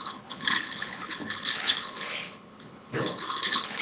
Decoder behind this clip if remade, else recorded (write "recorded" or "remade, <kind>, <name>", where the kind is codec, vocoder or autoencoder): remade, codec, HILCodec